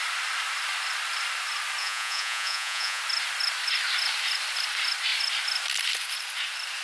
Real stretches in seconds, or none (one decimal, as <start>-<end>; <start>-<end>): 0.0-1.8; 3.0-6.8